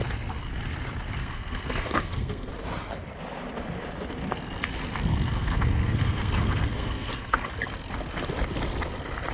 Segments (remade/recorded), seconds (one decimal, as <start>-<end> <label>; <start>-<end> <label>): 0.0-1.2 recorded; 1.2-2.5 remade; 2.5-5.1 recorded; 5.1-7.5 remade; 7.5-9.3 recorded